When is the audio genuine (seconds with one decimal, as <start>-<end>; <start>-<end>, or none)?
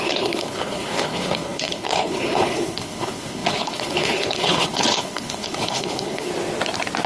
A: 6.3-7.1